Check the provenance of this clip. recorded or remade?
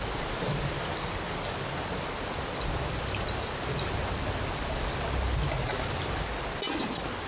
recorded